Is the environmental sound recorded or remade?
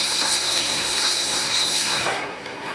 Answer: remade